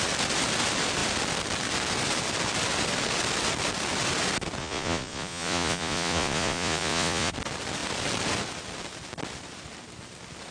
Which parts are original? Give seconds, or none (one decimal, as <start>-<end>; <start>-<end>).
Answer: 0.0-4.6; 7.3-10.5